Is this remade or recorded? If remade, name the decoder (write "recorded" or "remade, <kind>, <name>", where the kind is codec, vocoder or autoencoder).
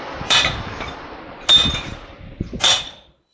remade, vocoder, BigVGAN v2